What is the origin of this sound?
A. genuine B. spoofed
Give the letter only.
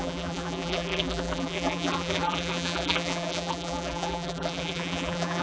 B